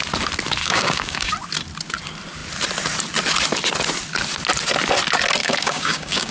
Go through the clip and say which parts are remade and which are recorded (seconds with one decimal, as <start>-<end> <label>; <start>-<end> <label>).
0.0-0.6 recorded; 0.6-1.3 remade; 1.3-5.4 recorded; 5.4-6.3 remade